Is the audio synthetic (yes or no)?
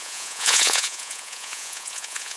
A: yes